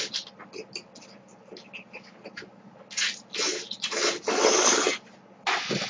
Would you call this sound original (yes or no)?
yes